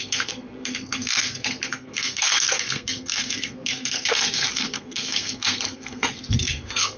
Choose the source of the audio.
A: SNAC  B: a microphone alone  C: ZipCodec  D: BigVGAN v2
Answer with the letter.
A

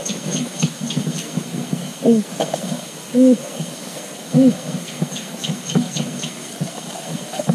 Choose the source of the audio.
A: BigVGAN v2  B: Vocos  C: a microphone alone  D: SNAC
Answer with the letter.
D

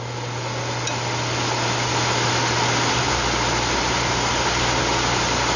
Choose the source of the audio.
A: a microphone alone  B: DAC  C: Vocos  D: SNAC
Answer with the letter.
A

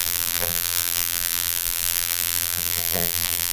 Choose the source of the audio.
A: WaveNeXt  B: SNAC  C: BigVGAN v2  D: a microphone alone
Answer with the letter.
C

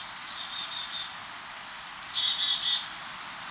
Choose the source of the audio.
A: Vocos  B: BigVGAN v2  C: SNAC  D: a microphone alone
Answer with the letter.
B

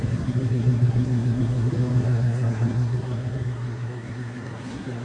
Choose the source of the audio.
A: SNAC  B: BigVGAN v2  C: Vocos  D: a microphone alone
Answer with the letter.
A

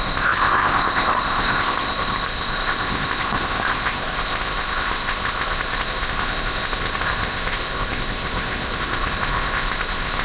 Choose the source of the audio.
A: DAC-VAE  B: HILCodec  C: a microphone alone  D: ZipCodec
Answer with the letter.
D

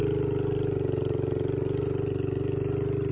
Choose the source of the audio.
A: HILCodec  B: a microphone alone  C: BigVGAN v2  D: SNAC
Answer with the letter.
B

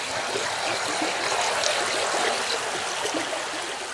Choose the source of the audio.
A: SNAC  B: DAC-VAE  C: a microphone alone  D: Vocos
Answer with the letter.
C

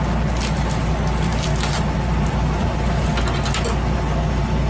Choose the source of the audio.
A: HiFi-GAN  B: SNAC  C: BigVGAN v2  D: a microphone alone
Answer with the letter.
D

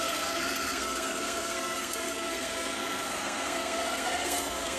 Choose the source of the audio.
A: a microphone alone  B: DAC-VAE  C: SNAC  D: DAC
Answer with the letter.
C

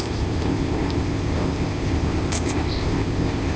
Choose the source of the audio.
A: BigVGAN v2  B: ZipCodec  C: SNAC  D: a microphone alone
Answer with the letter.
B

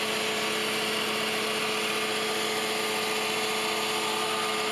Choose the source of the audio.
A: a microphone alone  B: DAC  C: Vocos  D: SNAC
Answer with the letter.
A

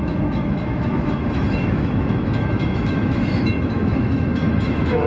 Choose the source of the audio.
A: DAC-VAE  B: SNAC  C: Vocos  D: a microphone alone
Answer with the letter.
A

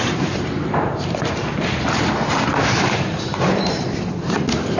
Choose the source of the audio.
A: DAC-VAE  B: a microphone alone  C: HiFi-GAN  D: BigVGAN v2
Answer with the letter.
D